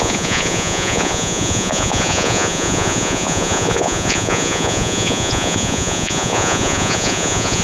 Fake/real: fake